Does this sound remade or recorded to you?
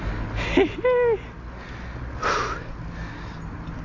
recorded